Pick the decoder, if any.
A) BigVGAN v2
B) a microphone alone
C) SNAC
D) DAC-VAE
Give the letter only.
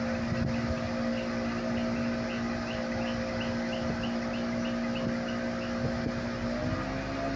B